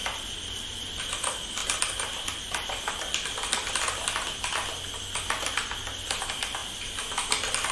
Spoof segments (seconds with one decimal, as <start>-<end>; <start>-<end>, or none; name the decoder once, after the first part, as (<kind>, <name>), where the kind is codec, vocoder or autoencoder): 0.0-1.0 (vocoder, BigVGAN v2); 6.6-7.3